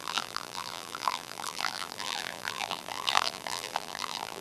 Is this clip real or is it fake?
fake